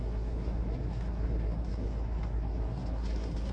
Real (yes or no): no